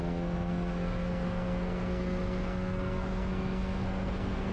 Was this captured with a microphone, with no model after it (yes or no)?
no